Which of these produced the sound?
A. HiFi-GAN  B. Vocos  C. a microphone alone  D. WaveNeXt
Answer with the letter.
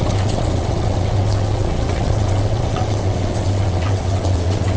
D